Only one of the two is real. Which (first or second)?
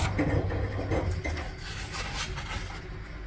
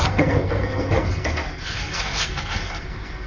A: first